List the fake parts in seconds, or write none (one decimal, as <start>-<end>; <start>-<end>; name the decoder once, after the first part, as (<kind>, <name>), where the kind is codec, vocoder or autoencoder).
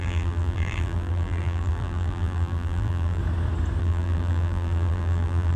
0.0-3.2 (vocoder, BigVGAN v2); 3.8-5.6